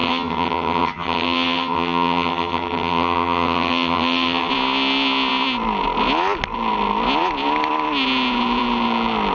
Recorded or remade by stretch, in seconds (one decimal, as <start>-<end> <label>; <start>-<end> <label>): 0.0-4.5 remade; 4.5-9.3 recorded